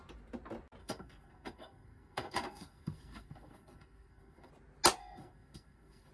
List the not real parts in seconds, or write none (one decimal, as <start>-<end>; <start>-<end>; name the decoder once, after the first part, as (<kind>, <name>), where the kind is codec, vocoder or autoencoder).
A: 0.8-4.5 (codec, SNAC); 5.0-6.1